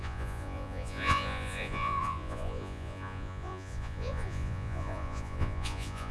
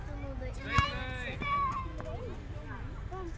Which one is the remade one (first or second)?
first